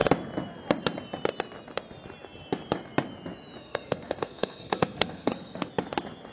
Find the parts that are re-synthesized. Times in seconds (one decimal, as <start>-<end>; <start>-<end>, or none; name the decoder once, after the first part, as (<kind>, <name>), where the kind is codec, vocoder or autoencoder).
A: 3.6-5.7 (codec, SNAC)